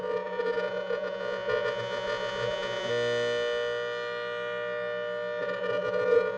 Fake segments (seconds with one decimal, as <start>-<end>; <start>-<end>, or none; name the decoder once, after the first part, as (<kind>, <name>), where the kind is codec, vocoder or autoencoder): 0.0-2.9 (vocoder, Vocos); 5.4-6.4